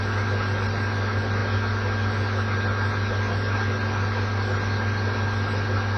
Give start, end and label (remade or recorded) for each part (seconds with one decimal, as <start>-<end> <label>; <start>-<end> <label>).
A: 0.0-6.0 recorded